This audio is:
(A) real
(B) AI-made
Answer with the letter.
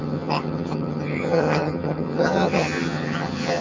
B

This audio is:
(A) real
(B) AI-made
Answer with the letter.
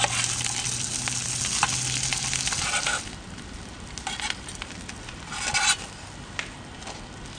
A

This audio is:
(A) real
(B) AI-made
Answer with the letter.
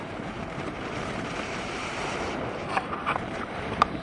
B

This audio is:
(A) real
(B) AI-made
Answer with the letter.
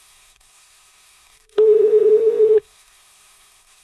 B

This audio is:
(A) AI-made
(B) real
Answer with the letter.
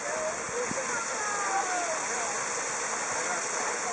B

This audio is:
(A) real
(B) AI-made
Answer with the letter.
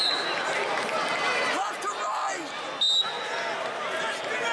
A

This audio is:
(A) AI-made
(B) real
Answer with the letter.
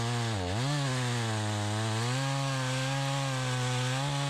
B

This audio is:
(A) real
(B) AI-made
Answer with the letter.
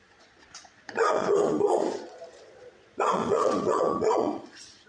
B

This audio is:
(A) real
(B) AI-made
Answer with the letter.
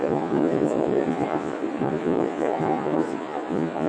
B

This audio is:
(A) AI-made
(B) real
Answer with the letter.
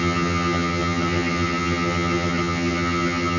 A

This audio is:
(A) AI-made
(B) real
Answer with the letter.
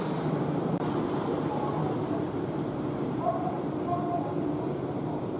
A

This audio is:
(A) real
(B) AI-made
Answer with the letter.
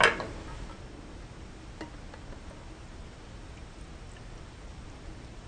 A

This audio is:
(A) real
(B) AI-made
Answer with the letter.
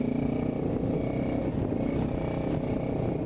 A